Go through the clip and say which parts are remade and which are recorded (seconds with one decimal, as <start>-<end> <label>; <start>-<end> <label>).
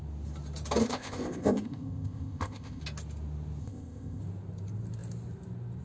0.0-0.8 recorded; 0.8-2.8 remade; 2.8-3.6 recorded; 3.6-4.2 remade; 4.2-5.8 recorded